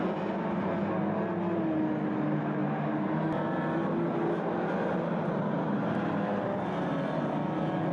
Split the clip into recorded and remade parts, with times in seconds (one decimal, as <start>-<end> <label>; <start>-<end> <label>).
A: 0.0-7.9 recorded